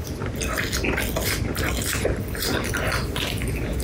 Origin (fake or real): real